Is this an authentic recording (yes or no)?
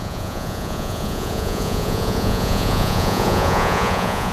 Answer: no